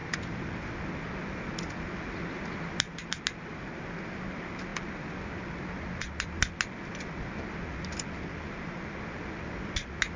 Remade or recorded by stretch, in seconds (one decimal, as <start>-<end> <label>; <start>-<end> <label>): 0.0-10.2 recorded